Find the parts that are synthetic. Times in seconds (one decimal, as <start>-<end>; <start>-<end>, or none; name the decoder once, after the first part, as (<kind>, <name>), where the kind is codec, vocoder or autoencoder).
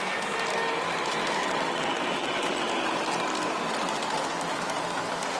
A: 1.4-2.7 (vocoder, WaveNeXt)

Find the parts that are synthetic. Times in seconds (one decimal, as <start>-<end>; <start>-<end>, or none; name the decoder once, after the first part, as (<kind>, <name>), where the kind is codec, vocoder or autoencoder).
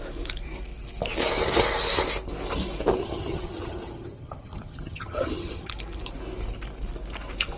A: 3.0-5.7 (vocoder, HiFi-GAN)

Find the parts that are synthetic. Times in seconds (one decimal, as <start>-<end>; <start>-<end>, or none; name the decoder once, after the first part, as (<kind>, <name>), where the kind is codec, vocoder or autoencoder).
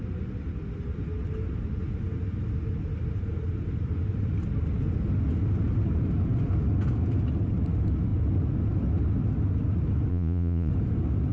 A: 10.1-10.7 (vocoder, Vocos)